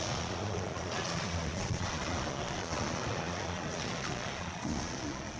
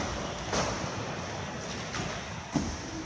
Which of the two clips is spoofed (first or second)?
first